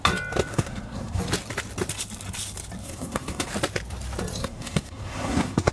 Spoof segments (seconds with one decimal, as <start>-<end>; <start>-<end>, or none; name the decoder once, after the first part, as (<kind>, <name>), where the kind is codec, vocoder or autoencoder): 0.5-1.2 (codec, SNAC); 2.8-3.5; 4.4-5.7